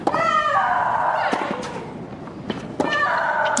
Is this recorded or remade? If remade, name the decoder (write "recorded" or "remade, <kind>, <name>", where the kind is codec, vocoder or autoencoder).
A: recorded